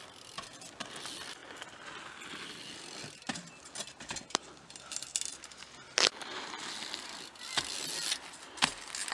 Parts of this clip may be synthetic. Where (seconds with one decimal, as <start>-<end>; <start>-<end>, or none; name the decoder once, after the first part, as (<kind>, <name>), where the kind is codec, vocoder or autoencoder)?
none